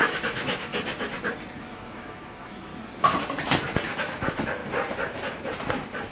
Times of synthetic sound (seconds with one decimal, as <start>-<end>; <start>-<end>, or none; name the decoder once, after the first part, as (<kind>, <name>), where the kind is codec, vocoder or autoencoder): 0.0-0.7 (autoencoder, DAC-VAE); 1.6-2.7; 4.0-4.6